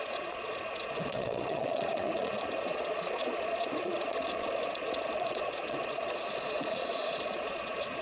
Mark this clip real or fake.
fake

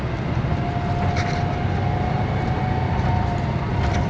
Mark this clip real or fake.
real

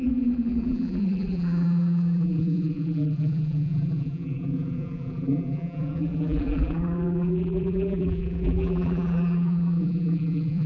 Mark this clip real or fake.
fake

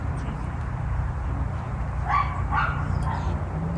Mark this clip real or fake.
real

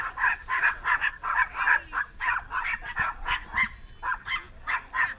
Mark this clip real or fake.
real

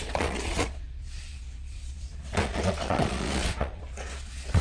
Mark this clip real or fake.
fake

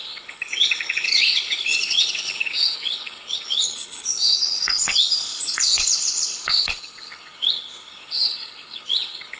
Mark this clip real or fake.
fake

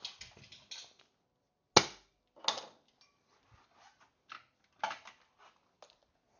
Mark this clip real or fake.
real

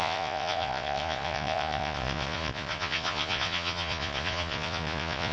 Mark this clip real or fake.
fake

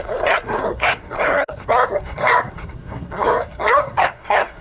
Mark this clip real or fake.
fake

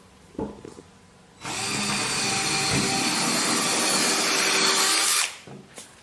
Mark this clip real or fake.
real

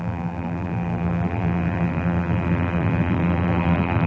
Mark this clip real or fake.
fake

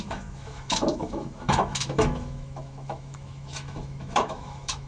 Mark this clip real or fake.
fake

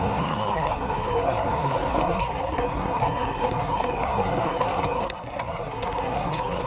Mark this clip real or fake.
fake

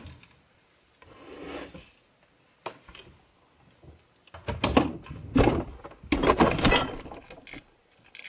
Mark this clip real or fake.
real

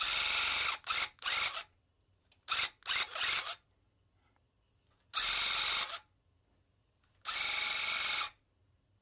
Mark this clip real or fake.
real